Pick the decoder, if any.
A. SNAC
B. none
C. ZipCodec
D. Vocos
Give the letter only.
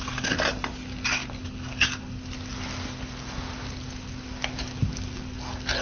B